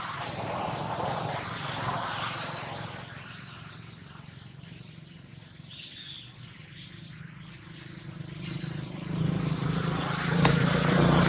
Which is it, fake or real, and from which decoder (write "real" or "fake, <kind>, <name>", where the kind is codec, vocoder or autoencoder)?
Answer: fake, vocoder, BigVGAN v2